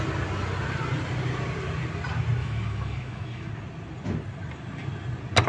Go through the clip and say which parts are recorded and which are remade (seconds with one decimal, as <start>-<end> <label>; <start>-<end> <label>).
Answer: 0.0-2.4 recorded; 2.4-3.5 remade; 3.5-5.5 recorded